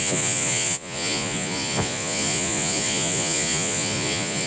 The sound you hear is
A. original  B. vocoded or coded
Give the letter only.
B